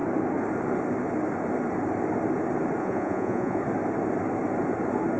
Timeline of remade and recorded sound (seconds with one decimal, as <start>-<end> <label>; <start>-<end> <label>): 0.0-2.8 recorded; 2.8-3.6 remade; 3.6-5.2 recorded